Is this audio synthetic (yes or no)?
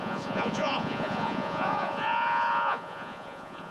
yes